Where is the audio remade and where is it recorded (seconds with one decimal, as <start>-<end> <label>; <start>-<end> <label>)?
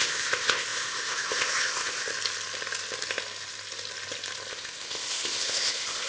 0.0-2.1 remade; 2.1-4.5 recorded; 4.5-6.1 remade